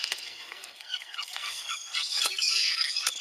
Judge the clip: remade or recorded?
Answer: remade